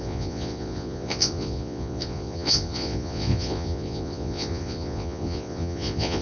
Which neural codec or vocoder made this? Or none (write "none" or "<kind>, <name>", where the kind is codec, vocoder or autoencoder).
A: vocoder, Vocos